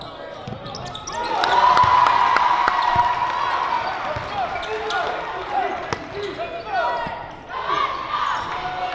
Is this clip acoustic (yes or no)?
yes